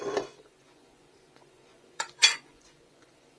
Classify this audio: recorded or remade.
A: remade